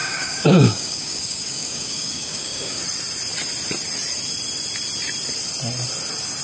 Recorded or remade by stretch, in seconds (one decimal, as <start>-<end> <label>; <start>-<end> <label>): 0.0-2.8 remade; 2.8-6.4 recorded